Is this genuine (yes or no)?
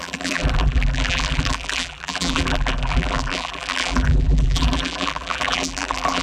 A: no